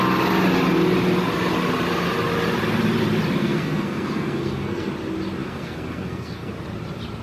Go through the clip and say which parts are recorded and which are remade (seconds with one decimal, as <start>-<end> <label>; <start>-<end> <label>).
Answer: 0.0-3.4 recorded; 3.4-4.9 remade; 4.9-5.4 recorded; 5.4-6.5 remade; 6.5-7.2 recorded